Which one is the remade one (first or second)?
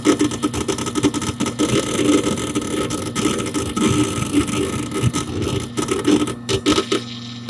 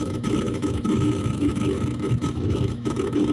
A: second